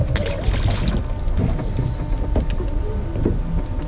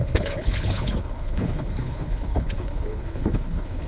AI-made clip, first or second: second